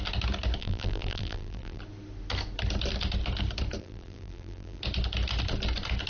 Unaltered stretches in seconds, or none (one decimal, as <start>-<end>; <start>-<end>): 0.0-0.6; 1.8-3.8; 4.8-6.1

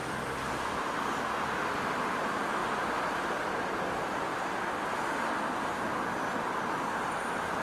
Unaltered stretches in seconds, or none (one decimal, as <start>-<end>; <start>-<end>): 0.5-2.6; 3.9-7.6